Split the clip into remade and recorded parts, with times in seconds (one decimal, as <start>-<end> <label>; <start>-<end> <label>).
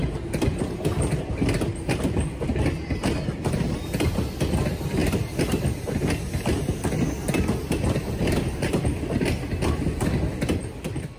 0.0-11.2 recorded